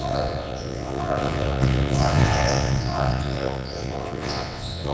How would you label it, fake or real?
fake